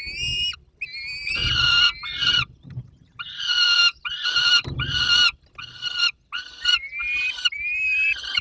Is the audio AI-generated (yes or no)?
no